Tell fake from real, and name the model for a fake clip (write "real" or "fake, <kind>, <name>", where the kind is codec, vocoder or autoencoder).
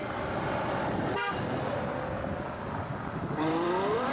fake, vocoder, BigVGAN v2